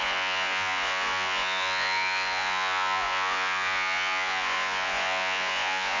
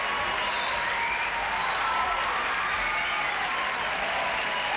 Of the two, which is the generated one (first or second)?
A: first